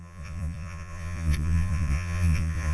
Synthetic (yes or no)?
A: yes